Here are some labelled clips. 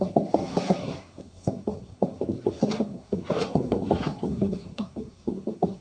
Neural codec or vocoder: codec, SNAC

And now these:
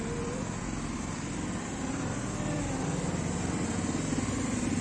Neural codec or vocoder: none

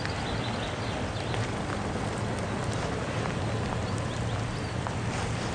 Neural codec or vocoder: none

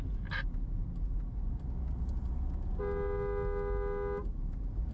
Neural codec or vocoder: none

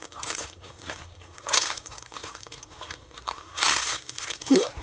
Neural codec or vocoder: codec, SNAC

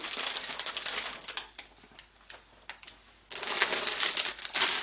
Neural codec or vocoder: none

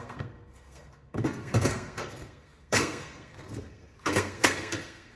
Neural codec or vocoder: codec, SNAC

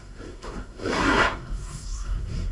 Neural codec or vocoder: codec, SNAC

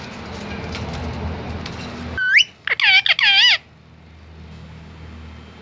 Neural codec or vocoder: none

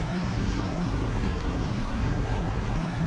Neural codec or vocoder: codec, SNAC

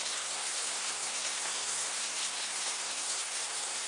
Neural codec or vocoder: codec, SNAC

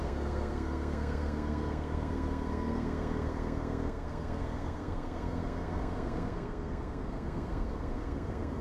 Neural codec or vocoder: codec, SNAC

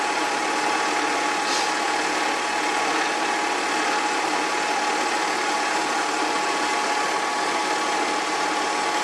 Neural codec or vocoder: none